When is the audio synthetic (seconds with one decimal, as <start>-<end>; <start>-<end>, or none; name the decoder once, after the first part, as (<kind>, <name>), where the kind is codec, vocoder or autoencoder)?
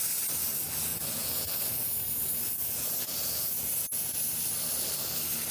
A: 0.9-4.2 (vocoder, Vocos)